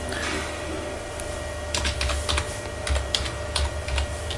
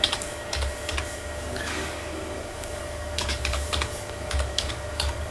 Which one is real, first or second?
first